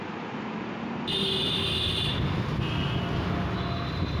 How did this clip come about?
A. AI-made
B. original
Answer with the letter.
B